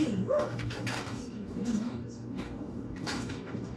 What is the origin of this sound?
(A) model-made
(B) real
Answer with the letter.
A